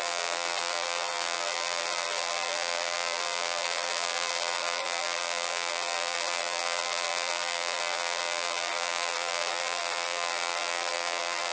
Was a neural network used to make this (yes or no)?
yes